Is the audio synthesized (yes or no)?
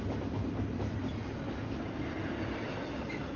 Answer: no